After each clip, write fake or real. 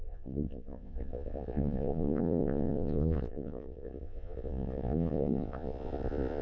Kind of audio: fake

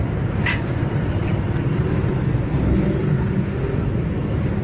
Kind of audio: real